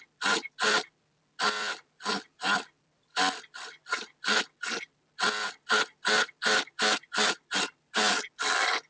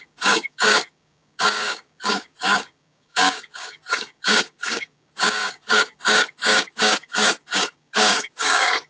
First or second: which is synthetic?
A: second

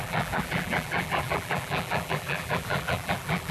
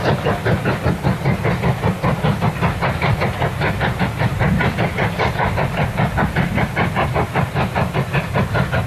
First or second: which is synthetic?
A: first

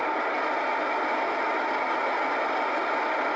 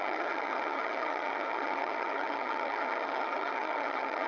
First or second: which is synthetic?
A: second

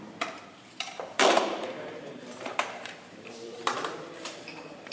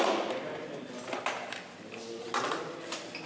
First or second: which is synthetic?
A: first